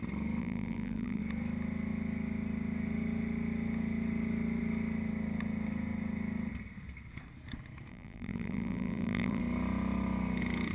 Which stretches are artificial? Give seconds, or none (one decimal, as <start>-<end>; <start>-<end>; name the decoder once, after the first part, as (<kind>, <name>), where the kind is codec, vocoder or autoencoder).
0.4-1.2 (vocoder, BigVGAN v2); 7.9-9.4